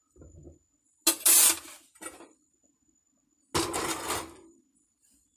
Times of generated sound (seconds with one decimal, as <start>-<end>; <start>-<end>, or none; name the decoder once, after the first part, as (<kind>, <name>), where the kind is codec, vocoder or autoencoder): none